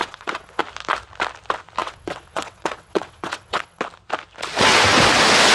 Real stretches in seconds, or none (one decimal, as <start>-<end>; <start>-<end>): 0.6-1.8; 3.8-5.5